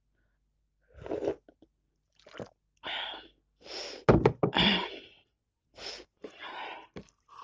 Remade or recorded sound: recorded